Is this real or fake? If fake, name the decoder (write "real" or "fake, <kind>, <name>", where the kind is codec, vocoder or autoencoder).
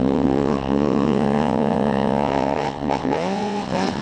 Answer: fake, vocoder, WaveNeXt